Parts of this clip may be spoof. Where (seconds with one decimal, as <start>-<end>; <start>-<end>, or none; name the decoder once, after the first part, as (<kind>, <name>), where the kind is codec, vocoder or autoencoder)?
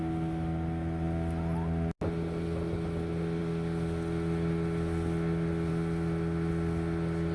none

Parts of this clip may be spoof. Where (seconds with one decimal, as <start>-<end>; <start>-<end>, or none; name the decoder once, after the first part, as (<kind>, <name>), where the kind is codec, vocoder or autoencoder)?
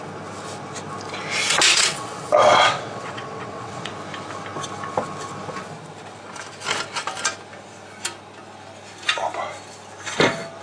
1.7-3.9 (vocoder, WaveNeXt)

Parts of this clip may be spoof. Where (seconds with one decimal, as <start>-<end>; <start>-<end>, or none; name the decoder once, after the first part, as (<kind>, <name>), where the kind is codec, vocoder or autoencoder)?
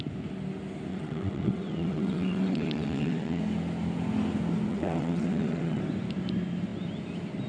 0.9-3.4 (vocoder, WaveNeXt); 4.7-5.8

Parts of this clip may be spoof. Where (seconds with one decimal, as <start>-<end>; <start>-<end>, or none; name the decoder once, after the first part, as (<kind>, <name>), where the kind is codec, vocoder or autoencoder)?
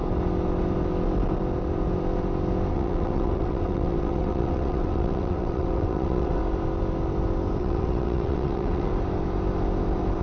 2.7-6.4 (vocoder, WaveNeXt); 7.6-8.9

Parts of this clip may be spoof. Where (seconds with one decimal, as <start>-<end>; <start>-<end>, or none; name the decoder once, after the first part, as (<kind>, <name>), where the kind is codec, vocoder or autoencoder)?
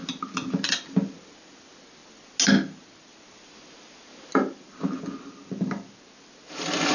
none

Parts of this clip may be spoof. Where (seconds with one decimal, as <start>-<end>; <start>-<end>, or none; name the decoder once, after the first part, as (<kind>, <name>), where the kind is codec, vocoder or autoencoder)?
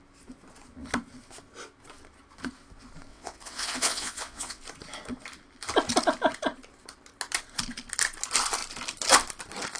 3.1-4.6 (vocoder, WaveNeXt)